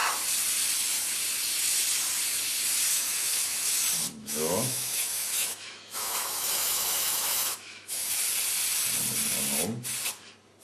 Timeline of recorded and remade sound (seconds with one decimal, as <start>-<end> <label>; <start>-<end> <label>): 0.0-2.9 recorded; 2.9-3.8 remade; 3.8-4.2 recorded; 4.2-8.2 remade; 8.2-10.6 recorded